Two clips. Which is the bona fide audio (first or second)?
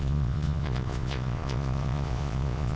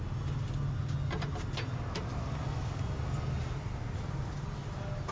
second